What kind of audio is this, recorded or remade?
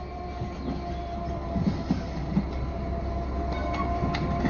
recorded